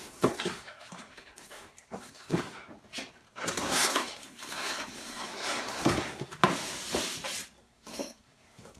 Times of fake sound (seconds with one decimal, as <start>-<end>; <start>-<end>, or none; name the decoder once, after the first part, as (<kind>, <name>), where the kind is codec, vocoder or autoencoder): 0.0-2.7 (codec, SNAC); 3.3-6.4; 7.6-8.8